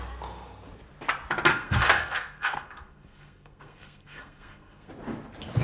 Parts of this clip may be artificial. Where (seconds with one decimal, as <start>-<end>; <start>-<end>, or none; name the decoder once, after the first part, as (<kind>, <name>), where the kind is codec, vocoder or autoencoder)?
1.5-4.9 (codec, SNAC)